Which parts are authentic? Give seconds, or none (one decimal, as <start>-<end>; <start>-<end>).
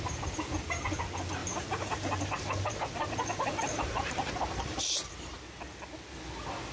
0.0-1.4; 5.4-6.7